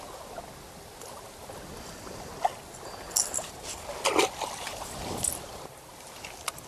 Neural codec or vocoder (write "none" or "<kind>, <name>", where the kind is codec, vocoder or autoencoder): none